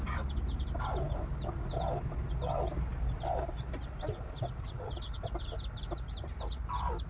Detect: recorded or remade recorded